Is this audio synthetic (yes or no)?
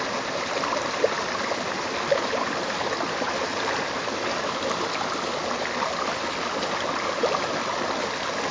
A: no